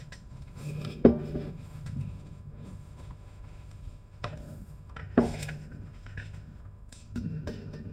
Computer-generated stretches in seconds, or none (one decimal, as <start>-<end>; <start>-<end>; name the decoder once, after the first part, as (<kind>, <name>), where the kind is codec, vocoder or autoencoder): 0.0-7.9 (autoencoder, DAC-VAE)